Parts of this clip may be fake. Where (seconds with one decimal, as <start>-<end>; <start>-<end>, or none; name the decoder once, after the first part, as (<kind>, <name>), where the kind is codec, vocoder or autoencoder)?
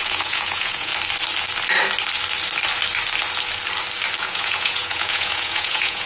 0.0-0.9 (vocoder, Vocos); 4.2-6.1